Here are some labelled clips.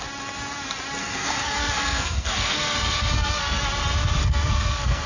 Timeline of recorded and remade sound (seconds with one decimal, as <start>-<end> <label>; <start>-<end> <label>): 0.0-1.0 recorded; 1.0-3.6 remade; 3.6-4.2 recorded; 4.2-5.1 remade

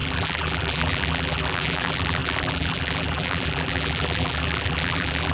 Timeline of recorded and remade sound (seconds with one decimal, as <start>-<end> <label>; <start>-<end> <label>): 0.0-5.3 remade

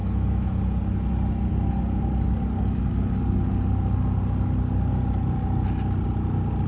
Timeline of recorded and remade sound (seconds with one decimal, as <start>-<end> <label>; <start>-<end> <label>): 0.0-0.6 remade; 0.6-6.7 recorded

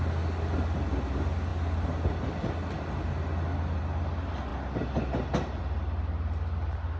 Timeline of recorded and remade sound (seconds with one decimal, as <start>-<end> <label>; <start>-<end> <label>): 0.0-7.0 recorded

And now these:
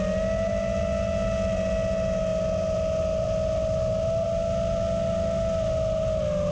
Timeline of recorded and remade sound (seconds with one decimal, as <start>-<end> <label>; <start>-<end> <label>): 0.0-6.5 recorded

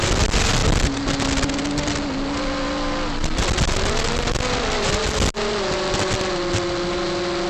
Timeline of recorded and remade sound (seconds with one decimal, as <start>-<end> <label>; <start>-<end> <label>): 0.0-7.5 recorded

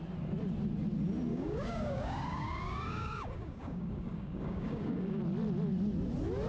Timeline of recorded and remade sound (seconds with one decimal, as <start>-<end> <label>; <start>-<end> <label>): 0.0-1.3 recorded; 1.3-5.2 remade; 5.2-6.5 recorded